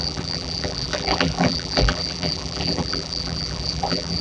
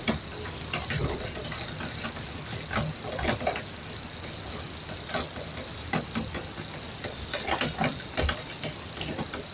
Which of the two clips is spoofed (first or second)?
first